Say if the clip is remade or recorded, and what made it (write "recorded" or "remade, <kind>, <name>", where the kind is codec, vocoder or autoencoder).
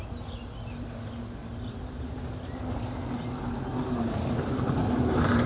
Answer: recorded